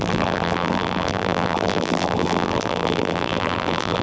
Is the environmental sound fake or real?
fake